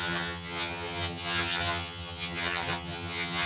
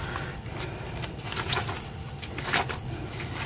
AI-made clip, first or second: first